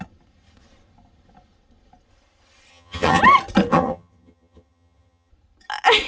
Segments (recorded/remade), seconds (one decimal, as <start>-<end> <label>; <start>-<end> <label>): 0.0-2.7 recorded; 2.7-3.2 remade; 3.2-3.7 recorded; 3.7-5.3 remade; 5.3-6.1 recorded